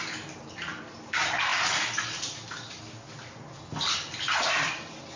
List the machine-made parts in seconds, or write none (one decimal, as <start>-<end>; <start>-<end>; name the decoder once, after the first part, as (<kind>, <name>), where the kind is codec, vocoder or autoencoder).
none